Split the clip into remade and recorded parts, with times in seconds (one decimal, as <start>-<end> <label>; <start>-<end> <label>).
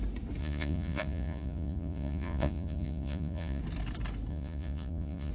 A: 0.0-0.4 recorded; 0.4-3.6 remade; 3.6-4.3 recorded; 4.3-5.3 remade